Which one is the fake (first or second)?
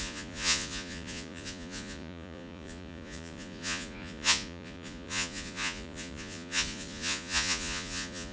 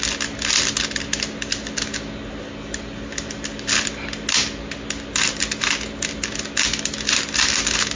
first